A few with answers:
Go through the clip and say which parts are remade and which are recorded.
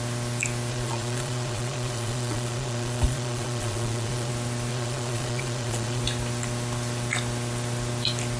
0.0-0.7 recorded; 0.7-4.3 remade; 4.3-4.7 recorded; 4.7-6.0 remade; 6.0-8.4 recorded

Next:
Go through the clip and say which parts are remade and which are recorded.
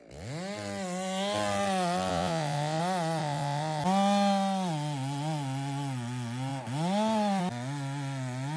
0.0-2.1 recorded; 2.1-2.8 remade; 2.8-3.2 recorded; 3.2-3.8 remade; 3.8-8.6 recorded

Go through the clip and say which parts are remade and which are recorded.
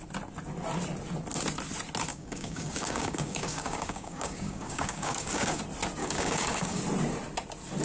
0.0-2.1 recorded; 2.1-5.6 remade; 5.6-6.0 recorded; 6.0-6.8 remade; 6.8-7.8 recorded